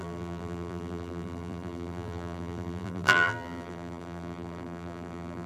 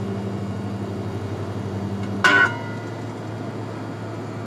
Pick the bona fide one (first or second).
second